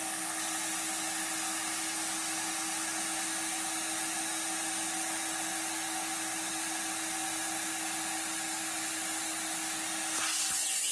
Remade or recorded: recorded